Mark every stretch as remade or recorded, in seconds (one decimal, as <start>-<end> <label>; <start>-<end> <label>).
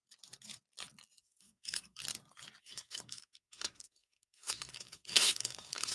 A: 0.0-1.2 recorded; 1.2-2.0 remade; 2.0-2.6 recorded; 2.6-5.9 remade